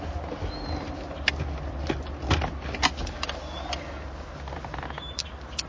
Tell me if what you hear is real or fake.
real